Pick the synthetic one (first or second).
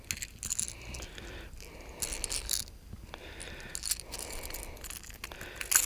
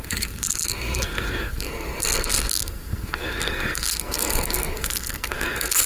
second